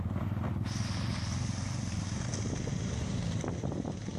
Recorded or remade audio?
recorded